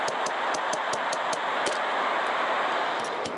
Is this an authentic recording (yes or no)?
yes